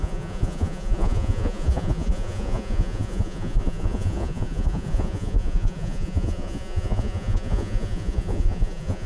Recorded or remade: remade